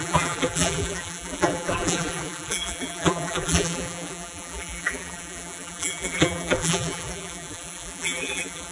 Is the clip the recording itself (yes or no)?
no